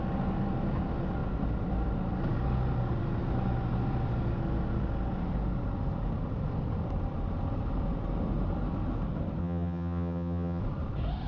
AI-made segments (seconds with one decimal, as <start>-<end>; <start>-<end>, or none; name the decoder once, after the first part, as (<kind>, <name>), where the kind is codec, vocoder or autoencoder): 9.4-10.6 (vocoder, HiFi-GAN)